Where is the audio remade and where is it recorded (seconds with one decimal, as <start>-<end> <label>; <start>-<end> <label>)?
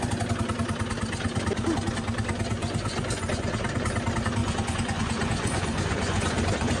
0.0-2.6 recorded; 2.6-3.5 remade; 3.5-4.4 recorded; 4.4-6.8 remade